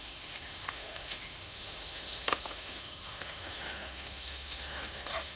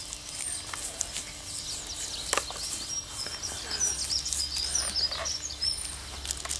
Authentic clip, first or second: second